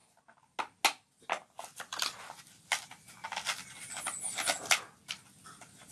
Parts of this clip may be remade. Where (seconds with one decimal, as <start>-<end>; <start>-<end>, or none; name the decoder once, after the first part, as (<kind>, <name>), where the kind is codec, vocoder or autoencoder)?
none

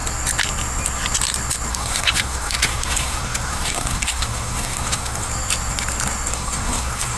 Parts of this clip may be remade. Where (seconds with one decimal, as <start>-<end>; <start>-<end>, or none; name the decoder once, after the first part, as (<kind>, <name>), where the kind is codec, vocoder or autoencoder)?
1.7-5.3 (codec, SNAC); 6.3-7.2

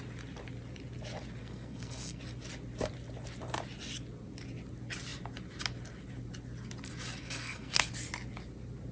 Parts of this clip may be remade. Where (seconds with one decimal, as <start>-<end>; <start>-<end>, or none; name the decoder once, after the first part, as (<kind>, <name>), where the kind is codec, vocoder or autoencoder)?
1.4-2.2 (codec, SNAC); 7.2-7.9

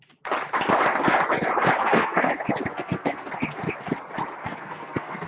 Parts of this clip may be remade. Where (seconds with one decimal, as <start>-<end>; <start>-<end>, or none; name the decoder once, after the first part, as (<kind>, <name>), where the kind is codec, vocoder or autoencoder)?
1.8-2.3 (codec, SNAC); 2.7-3.3; 4.4-5.3